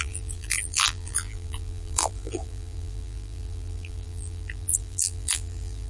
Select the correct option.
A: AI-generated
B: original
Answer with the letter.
A